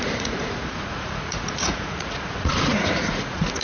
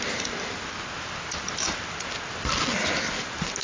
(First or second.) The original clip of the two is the second